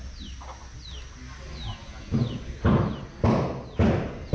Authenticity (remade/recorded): recorded